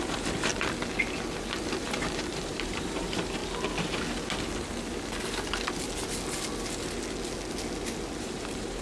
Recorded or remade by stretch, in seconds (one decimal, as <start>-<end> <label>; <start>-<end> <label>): 0.0-0.5 remade; 0.5-1.8 recorded; 1.8-3.4 remade; 3.4-8.2 recorded; 8.2-8.8 remade